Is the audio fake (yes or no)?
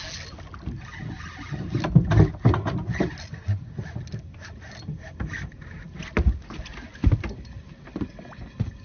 no